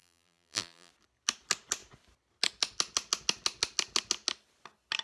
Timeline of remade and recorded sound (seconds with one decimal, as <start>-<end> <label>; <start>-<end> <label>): 0.0-0.9 remade; 0.9-5.0 recorded